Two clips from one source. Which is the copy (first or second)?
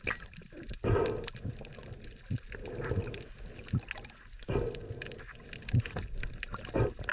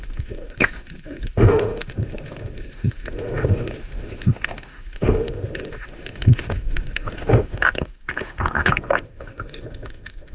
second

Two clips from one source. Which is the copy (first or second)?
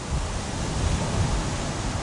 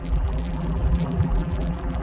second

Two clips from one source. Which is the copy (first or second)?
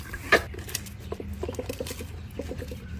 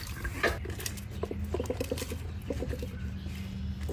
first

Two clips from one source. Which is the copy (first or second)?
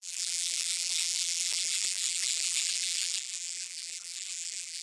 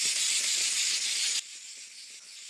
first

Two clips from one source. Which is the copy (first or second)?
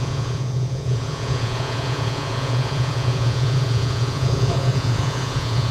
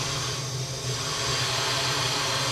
first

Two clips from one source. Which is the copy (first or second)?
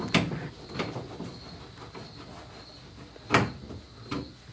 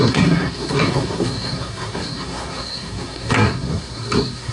second